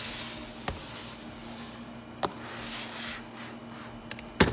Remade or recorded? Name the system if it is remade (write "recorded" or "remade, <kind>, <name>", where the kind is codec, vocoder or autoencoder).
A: recorded